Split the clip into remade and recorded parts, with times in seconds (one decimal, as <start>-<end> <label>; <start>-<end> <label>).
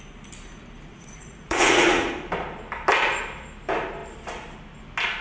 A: 0.0-0.9 recorded; 0.9-2.1 remade; 2.1-5.2 recorded